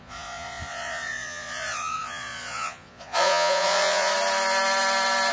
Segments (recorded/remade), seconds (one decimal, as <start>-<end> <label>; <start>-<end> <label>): 0.0-4.1 remade; 4.1-5.3 recorded